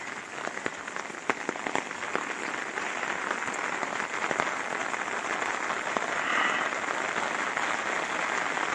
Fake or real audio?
real